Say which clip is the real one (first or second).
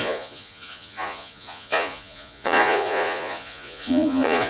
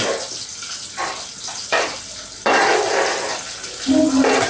second